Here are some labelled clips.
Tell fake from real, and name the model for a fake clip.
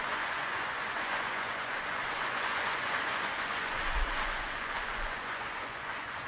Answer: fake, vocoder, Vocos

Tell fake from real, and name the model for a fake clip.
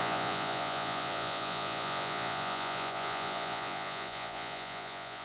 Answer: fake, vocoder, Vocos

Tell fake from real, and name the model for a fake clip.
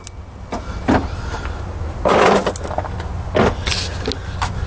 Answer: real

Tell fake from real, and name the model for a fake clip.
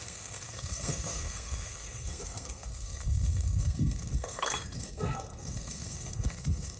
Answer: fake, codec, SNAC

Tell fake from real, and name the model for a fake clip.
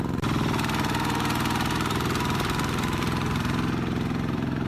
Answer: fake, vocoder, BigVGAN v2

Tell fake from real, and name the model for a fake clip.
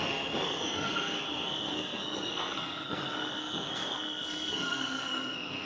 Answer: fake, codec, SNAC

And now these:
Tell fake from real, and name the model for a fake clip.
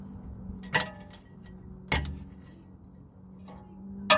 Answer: real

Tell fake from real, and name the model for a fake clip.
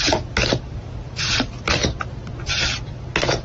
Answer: real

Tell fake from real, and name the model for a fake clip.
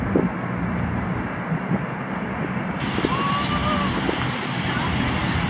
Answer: real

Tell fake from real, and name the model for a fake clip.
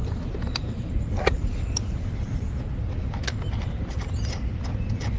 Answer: real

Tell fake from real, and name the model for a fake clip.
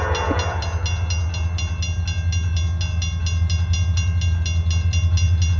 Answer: real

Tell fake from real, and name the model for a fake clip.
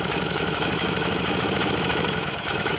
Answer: fake, autoencoder, DAC-VAE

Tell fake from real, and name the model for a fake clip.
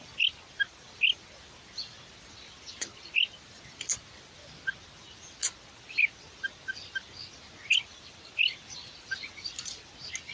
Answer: real